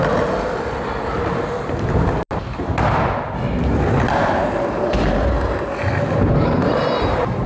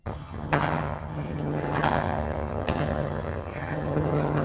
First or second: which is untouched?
first